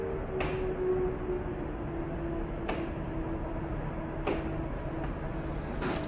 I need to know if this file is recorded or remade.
recorded